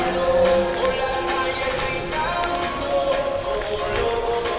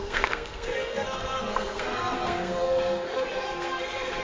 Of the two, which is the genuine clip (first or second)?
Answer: first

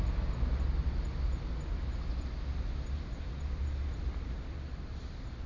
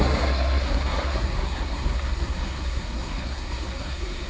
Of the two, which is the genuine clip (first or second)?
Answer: first